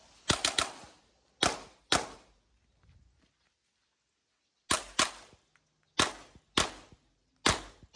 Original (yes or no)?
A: yes